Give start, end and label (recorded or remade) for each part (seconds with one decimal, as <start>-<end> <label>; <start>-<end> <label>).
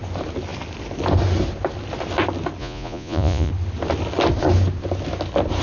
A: 0.0-2.6 recorded; 2.6-3.5 remade; 3.5-5.6 recorded